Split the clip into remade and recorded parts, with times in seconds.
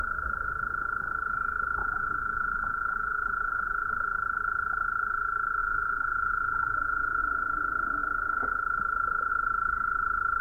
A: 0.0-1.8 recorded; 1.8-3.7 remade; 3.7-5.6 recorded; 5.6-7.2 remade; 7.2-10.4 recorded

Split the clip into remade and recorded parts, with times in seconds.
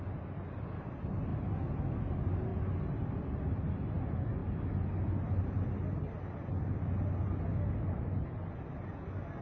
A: 0.0-9.4 recorded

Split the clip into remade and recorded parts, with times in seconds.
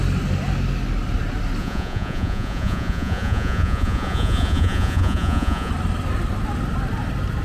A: 0.0-1.6 recorded; 1.6-5.7 remade; 5.7-7.4 recorded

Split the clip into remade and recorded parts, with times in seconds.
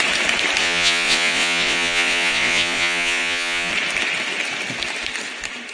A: 0.0-0.6 recorded; 0.6-3.7 remade; 3.7-5.7 recorded